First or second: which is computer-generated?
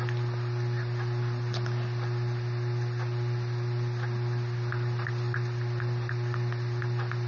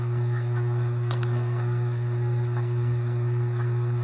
second